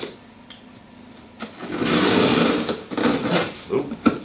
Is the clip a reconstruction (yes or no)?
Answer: no